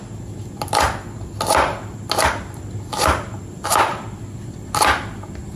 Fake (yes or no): no